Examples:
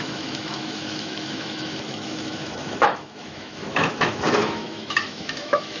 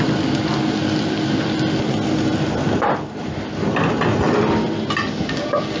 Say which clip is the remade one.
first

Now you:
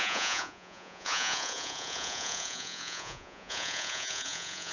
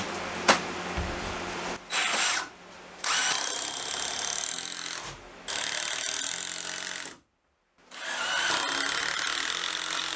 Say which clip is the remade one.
first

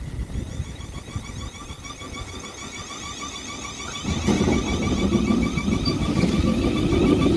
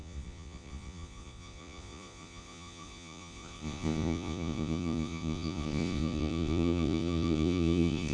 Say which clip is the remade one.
second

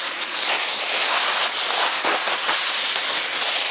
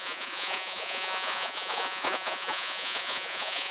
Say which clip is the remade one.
second